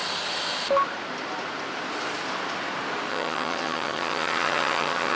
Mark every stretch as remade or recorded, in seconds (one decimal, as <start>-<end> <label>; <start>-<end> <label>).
0.0-3.1 recorded; 3.1-5.2 remade